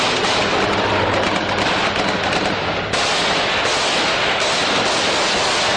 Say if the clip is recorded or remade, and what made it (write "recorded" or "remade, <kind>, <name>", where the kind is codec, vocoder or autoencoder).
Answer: recorded